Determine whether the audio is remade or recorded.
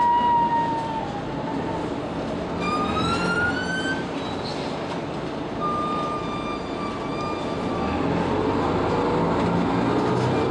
recorded